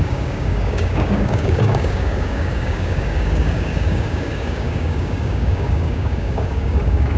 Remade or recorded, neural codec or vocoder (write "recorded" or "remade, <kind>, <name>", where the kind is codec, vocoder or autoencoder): remade, codec, DAC